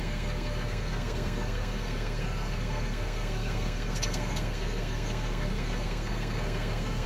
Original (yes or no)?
no